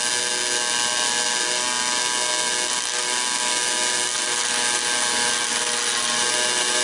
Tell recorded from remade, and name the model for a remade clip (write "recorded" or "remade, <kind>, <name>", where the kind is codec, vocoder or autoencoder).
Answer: recorded